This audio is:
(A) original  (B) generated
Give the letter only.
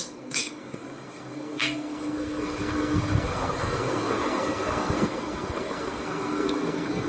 B